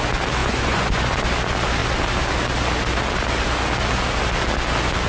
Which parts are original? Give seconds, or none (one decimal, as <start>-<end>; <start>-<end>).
0.0-0.4; 1.2-5.1